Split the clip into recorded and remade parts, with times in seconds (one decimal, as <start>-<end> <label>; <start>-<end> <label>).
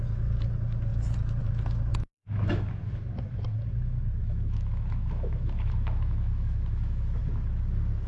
0.0-1.9 recorded; 1.9-2.9 remade; 2.9-4.2 recorded; 4.2-7.2 remade; 7.2-8.1 recorded